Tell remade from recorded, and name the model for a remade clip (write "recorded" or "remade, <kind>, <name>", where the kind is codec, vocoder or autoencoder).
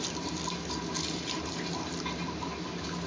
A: recorded